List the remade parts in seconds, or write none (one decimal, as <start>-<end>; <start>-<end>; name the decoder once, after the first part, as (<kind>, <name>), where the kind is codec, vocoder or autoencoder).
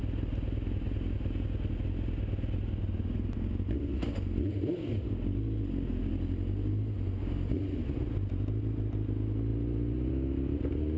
none